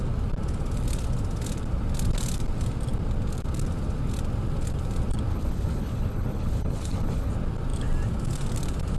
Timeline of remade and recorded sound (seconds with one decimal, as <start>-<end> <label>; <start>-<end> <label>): 0.0-5.3 recorded; 5.3-7.3 remade; 7.3-9.0 recorded